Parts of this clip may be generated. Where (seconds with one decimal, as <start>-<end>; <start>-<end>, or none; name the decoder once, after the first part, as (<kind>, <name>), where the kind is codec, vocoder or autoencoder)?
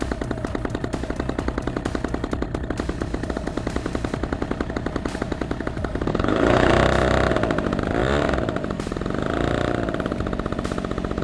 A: 6.1-6.7 (codec, HILCodec)